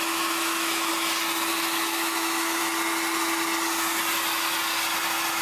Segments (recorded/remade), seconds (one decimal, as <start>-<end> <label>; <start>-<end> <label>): 0.0-0.9 remade; 0.9-1.5 recorded; 1.5-2.6 remade; 2.6-5.4 recorded